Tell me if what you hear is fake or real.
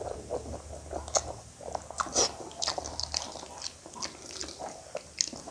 real